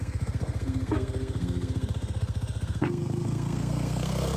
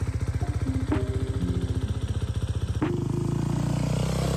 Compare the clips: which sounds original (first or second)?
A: second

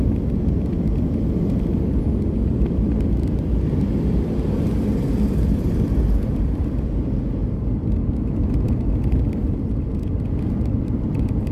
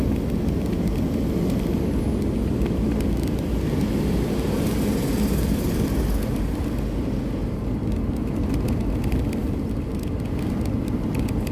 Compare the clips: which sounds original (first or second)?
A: second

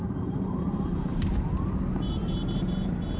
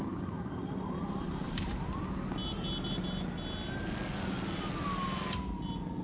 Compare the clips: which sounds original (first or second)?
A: second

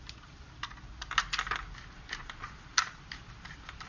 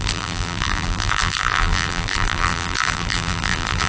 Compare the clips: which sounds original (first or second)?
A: first